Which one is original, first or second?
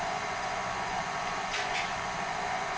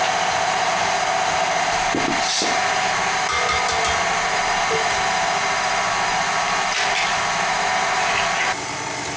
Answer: second